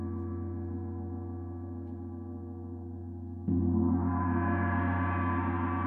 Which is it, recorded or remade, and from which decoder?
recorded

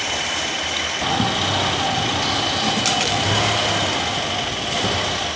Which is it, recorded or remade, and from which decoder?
recorded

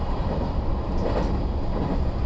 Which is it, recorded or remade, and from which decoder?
recorded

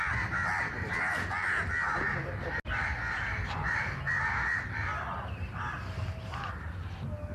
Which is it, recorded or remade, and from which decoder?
recorded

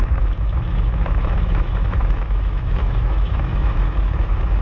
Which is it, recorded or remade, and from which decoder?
remade, autoencoder, DAC-VAE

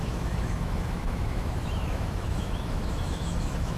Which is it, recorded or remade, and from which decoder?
remade, autoencoder, DAC-VAE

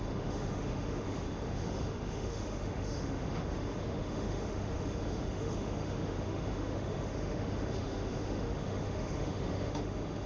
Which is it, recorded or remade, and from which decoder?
remade, autoencoder, DAC-VAE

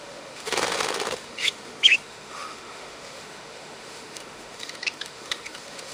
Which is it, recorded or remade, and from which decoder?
remade, autoencoder, DAC-VAE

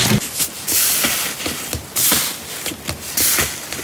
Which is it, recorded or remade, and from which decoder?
recorded